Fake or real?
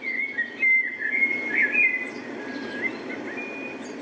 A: real